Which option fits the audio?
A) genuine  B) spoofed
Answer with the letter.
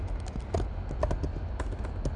A